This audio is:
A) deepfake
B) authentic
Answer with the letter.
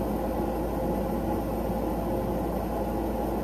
B